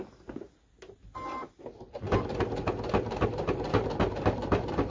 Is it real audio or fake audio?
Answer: real